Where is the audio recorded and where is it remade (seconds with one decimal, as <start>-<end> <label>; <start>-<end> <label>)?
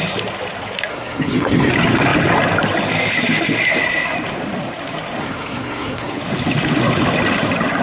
0.0-0.9 recorded; 0.9-1.7 remade; 1.7-5.2 recorded; 5.2-6.2 remade; 6.2-7.8 recorded